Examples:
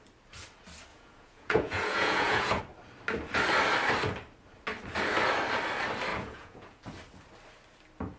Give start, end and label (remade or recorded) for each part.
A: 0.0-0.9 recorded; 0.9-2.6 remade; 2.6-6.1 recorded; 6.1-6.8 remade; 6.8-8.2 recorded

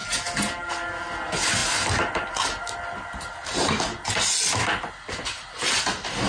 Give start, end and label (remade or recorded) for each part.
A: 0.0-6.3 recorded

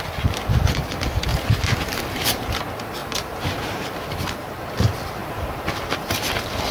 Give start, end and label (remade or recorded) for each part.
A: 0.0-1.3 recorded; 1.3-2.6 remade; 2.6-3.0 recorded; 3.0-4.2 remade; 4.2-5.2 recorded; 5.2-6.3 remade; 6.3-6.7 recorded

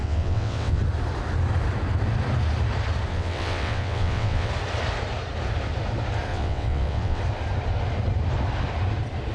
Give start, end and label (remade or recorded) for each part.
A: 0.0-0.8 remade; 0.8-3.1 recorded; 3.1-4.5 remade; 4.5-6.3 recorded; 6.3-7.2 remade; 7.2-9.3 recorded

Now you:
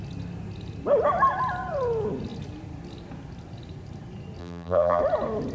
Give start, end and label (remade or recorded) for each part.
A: 0.0-4.4 recorded; 4.4-5.0 remade; 5.0-5.5 recorded

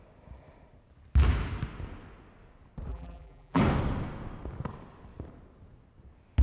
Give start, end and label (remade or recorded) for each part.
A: 0.0-2.9 recorded; 2.9-3.6 remade; 3.6-6.4 recorded